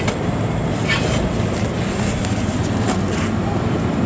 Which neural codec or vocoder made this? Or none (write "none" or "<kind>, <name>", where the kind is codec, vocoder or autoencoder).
none